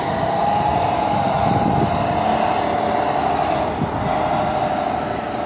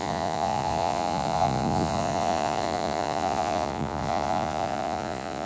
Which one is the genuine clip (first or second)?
first